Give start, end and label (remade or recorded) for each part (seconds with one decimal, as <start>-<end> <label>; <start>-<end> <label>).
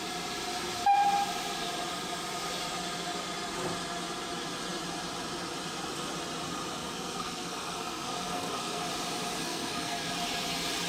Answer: 0.0-6.8 recorded; 6.8-8.8 remade; 8.8-9.4 recorded; 9.4-10.1 remade; 10.1-10.9 recorded